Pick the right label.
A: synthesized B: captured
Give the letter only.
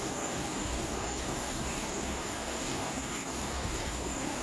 A